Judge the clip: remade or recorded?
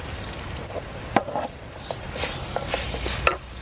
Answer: recorded